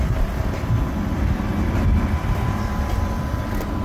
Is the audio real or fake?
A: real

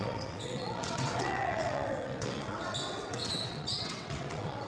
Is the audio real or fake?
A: fake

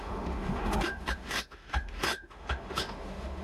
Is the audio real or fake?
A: fake